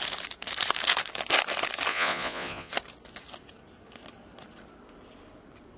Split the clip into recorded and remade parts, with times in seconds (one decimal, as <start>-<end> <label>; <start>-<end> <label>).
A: 0.0-1.9 recorded; 1.9-2.7 remade; 2.7-5.8 recorded